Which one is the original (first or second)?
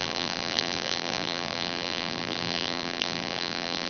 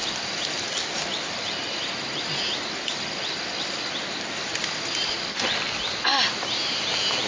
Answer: second